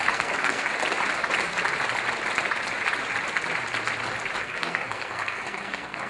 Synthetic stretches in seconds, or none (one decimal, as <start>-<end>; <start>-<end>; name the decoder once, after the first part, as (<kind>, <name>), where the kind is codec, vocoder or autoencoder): 0.0-0.7 (codec, SNAC); 4.4-6.1